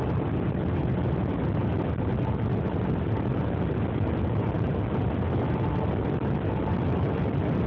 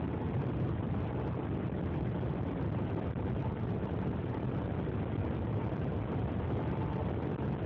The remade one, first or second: second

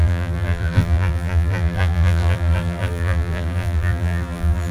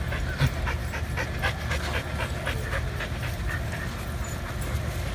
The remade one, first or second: first